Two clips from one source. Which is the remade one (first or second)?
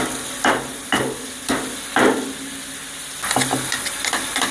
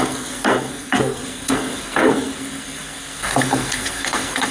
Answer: second